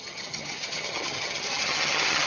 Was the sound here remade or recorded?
remade